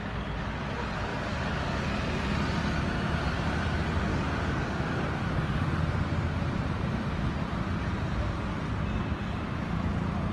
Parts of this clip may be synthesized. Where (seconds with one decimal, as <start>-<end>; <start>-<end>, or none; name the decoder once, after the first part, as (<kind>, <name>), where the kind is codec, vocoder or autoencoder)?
1.1-1.8 (codec, DAC); 4.1-5.8